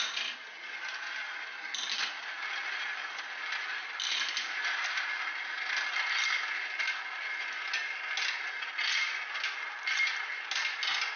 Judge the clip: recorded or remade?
recorded